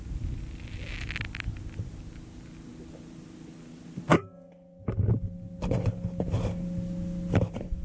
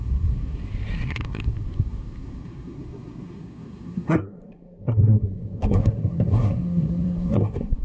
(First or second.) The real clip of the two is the first